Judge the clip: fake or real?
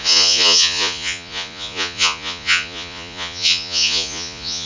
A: fake